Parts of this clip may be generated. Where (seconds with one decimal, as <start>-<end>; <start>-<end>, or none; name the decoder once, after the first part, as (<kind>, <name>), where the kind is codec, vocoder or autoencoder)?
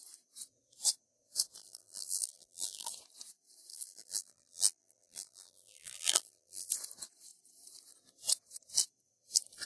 1.6-2.9 (vocoder, BigVGAN v2); 3.7-6.7